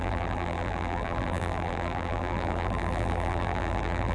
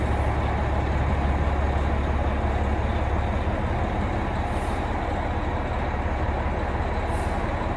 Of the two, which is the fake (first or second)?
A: first